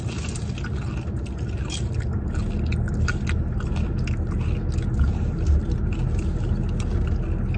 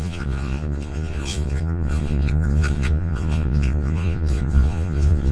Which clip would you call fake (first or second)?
second